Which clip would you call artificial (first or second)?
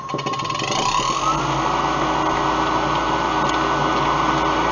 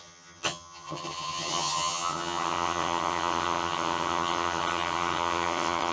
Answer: second